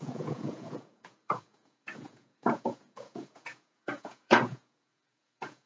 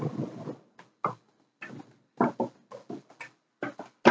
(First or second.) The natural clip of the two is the second